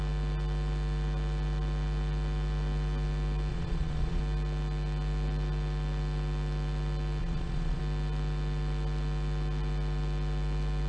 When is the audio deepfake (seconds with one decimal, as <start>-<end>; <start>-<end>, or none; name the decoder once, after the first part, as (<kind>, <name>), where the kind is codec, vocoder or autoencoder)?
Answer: 3.5-4.2 (vocoder, Vocos); 7.2-7.8